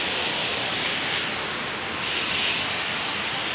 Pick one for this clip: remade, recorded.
recorded